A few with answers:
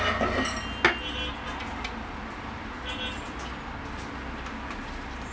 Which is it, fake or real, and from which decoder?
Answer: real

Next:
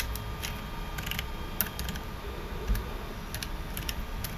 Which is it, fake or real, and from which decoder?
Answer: real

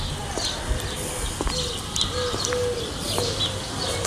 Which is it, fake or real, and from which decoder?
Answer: real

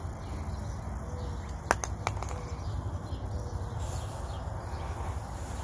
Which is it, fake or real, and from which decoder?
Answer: real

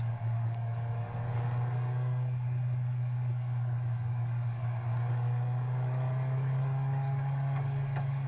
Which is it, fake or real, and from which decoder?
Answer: fake, codec, DAC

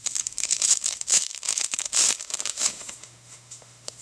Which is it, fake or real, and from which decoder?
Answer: fake, autoencoder, DAC-VAE